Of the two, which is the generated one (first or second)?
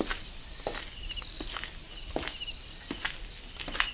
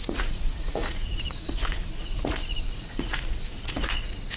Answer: second